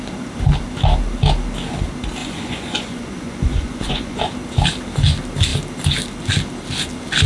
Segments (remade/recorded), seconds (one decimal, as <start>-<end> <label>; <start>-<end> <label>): 0.0-2.2 recorded; 2.2-4.2 remade; 4.2-7.3 recorded